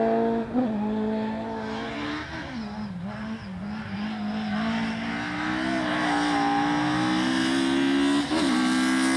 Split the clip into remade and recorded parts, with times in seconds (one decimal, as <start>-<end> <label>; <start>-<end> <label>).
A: 0.0-9.2 recorded